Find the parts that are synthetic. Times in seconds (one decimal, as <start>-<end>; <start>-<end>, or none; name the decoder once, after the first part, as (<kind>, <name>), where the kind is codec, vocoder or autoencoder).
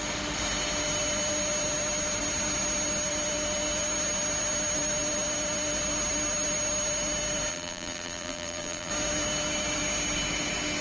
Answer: 7.5-8.9 (vocoder, BigVGAN v2)